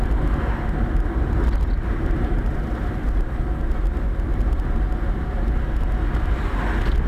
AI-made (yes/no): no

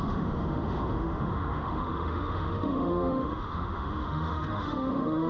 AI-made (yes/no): yes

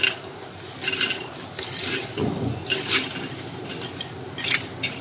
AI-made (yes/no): no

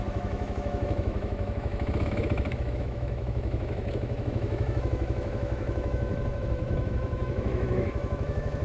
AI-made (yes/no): yes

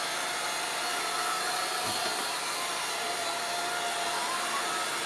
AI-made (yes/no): no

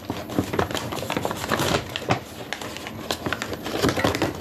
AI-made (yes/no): no